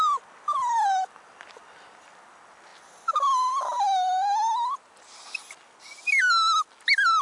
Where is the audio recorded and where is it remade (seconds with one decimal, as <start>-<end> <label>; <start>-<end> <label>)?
0.0-7.2 recorded

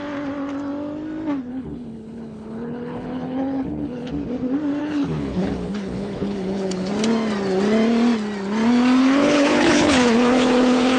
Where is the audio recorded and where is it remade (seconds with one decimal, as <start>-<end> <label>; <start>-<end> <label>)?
0.0-1.5 recorded; 1.5-4.1 remade; 4.1-4.8 recorded; 4.8-6.9 remade; 6.9-9.0 recorded; 9.0-11.0 remade

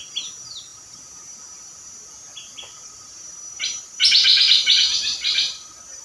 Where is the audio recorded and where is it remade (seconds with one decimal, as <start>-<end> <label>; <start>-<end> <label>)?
0.0-6.0 recorded

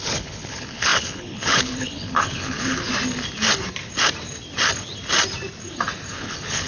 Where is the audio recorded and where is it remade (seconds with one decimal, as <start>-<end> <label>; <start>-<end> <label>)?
0.0-2.9 remade; 2.9-6.1 recorded; 6.1-6.7 remade

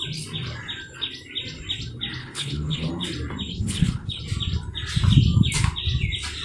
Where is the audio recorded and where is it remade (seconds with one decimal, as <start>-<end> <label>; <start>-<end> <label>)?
0.0-2.2 recorded; 2.2-2.9 remade; 2.9-3.5 recorded; 3.5-4.2 remade; 4.2-6.4 recorded

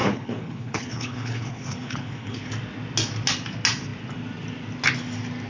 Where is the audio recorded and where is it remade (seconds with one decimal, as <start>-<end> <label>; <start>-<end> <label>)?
0.0-2.5 remade; 2.5-5.5 recorded